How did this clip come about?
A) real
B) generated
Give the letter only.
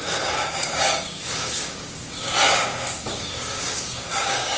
B